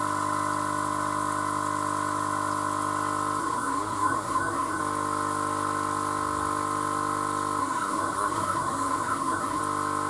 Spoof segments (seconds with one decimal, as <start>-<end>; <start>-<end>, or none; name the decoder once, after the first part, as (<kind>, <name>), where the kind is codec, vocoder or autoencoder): 3.4-4.8 (codec, SNAC); 7.6-9.6